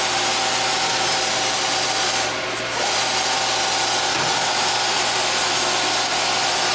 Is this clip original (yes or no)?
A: yes